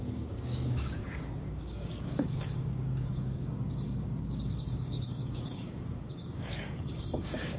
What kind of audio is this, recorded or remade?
remade